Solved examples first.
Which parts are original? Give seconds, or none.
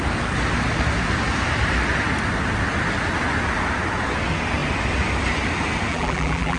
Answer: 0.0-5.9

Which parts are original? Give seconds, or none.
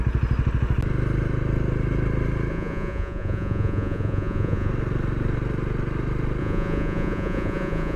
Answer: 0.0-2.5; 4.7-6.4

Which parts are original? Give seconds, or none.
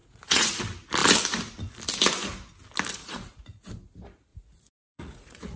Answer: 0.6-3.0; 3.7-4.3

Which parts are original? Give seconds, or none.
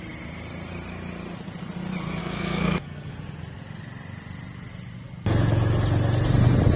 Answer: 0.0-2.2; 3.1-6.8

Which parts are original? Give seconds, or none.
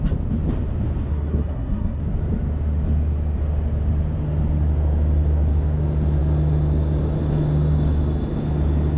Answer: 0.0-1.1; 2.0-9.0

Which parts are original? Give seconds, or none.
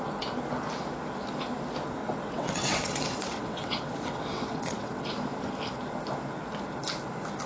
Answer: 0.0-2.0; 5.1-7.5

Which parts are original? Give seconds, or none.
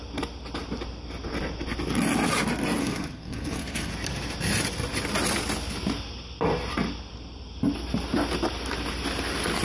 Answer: 0.0-2.8; 3.9-9.6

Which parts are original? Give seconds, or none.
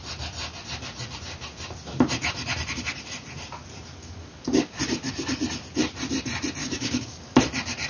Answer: 0.0-4.0; 4.8-6.6; 7.4-7.9